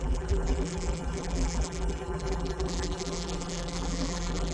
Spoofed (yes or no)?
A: yes